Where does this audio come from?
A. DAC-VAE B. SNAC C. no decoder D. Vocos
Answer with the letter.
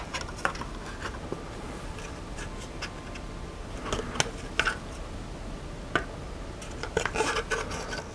C